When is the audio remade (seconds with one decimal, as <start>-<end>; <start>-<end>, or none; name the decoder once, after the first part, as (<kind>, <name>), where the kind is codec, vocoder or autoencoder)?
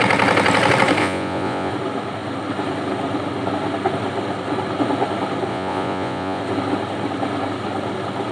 1.0-1.7 (vocoder, Vocos); 5.5-6.4